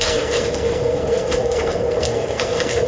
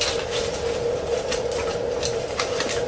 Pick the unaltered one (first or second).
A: second